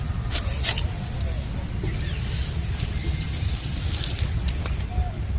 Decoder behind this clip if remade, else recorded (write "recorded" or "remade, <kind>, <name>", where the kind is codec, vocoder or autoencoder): recorded